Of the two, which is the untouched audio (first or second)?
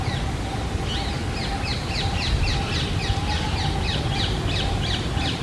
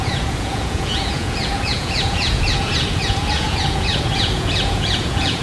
first